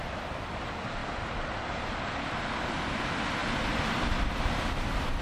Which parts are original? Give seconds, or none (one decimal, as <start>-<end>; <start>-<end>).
0.0-5.2